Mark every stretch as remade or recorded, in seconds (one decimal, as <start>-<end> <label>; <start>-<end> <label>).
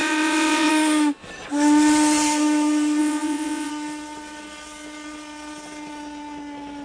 0.0-0.7 remade; 0.7-3.0 recorded; 3.0-3.7 remade; 3.7-6.8 recorded